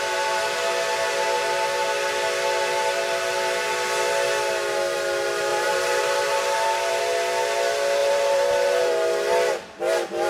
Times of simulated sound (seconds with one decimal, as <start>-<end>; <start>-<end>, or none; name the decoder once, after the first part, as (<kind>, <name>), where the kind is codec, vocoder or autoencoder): 5.5-7.0 (vocoder, BigVGAN v2); 8.0-8.9